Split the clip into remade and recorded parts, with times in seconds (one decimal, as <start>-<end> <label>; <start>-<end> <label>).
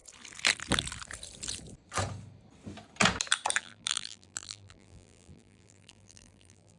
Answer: 0.0-3.6 recorded; 3.6-6.8 remade